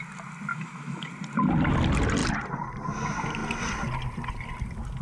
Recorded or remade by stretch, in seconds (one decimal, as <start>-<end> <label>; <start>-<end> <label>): 0.0-0.5 recorded; 0.5-1.1 remade; 1.1-5.0 recorded